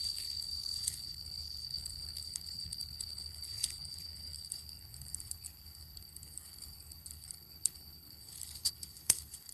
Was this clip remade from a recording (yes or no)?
yes